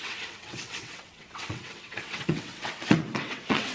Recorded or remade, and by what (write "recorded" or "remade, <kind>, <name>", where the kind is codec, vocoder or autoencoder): remade, vocoder, WaveNeXt